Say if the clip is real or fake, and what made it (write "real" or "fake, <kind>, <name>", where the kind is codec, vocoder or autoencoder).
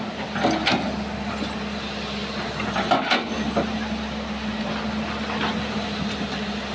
real